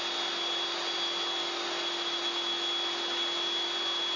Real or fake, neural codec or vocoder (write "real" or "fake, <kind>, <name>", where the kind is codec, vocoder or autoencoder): real